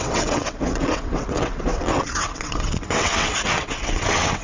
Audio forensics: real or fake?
fake